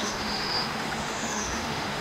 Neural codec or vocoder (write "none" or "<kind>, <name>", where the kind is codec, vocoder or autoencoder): autoencoder, DAC-VAE